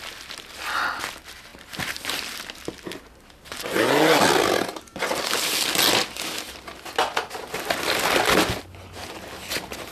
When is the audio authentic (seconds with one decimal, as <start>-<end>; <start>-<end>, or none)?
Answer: 0.0-9.9